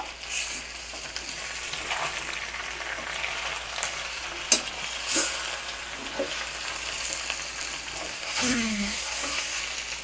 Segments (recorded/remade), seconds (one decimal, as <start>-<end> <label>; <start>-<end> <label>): 0.0-8.1 recorded; 8.1-9.6 remade; 9.6-10.0 recorded

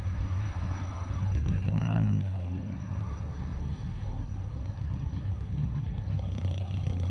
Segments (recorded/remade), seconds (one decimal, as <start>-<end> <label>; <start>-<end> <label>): 0.0-7.1 remade

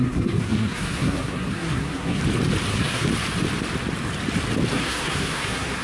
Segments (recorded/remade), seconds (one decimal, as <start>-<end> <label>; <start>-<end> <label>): 0.0-2.2 remade; 2.2-2.7 recorded; 2.7-3.1 remade; 3.1-4.7 recorded; 4.7-5.8 remade

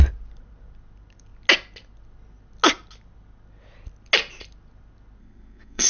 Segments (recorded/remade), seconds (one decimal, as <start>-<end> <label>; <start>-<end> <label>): 0.0-5.2 recorded; 5.2-5.9 remade